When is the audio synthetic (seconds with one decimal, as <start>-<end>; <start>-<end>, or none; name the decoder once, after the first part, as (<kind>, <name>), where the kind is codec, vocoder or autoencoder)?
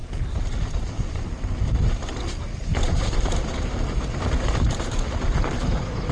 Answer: 2.7-4.9 (vocoder, BigVGAN v2)